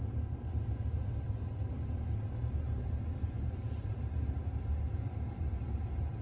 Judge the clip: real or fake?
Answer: real